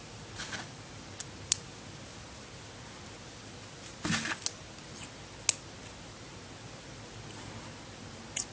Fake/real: real